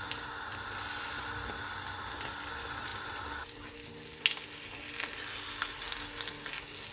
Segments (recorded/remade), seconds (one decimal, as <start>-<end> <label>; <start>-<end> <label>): 0.0-6.9 recorded